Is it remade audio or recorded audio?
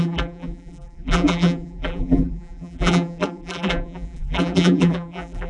remade